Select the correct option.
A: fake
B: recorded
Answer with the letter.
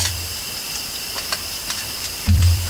A